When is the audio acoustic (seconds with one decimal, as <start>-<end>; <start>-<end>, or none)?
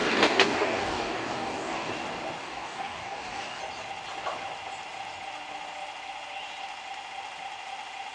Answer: 1.9-2.4; 3.6-8.1